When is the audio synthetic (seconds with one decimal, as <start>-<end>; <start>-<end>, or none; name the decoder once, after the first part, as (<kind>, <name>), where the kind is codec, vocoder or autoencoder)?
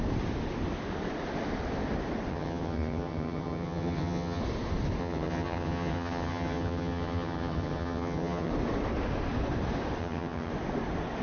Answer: 2.3-4.4 (vocoder, HiFi-GAN); 5.0-8.5; 10.0-10.5